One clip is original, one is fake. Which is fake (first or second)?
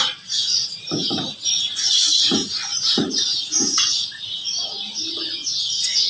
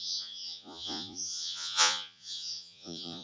second